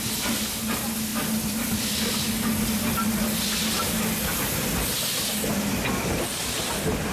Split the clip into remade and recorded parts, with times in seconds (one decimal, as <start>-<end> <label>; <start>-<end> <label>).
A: 0.0-7.1 recorded